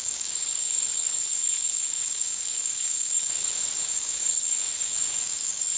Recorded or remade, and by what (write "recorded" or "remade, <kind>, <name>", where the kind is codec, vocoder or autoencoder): remade, codec, DAC